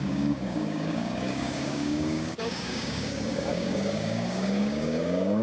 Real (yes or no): no